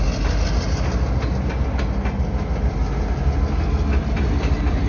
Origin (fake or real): real